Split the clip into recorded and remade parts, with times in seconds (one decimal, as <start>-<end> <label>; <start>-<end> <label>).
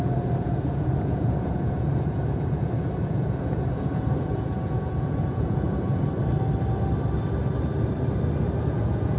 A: 0.0-5.9 remade; 5.9-8.7 recorded; 8.7-9.2 remade